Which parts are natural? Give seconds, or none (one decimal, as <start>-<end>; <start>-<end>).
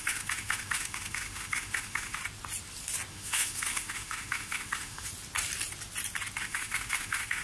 2.2-3.1; 5.1-6.4